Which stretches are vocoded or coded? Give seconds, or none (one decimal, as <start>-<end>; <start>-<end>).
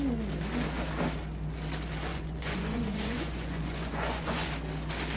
2.1-4.5